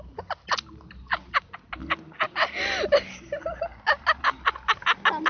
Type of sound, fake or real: real